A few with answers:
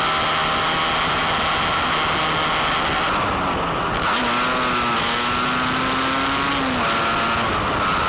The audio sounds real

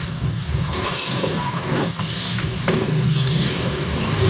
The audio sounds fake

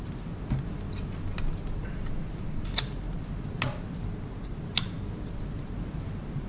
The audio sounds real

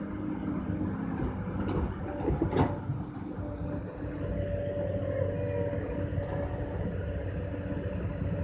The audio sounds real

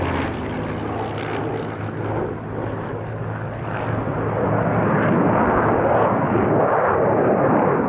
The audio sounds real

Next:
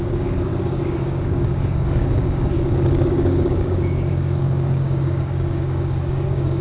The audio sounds fake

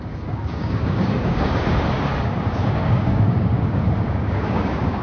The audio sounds fake